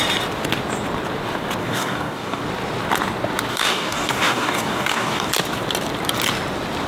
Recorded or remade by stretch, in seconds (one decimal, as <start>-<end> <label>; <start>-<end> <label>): 0.0-1.6 recorded; 1.6-2.4 remade; 2.4-3.5 recorded; 3.5-5.3 remade; 5.3-6.9 recorded